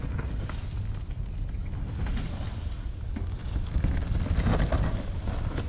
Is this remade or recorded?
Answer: recorded